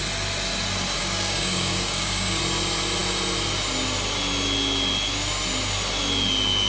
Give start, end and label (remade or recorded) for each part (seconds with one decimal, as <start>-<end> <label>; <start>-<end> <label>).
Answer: 0.0-1.0 recorded; 1.0-2.4 remade; 2.4-6.7 recorded